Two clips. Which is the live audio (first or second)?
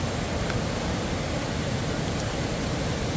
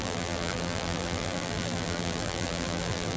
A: first